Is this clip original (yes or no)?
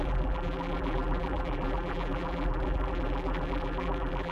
no